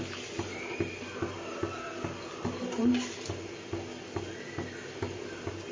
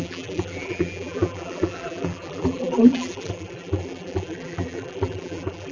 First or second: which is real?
first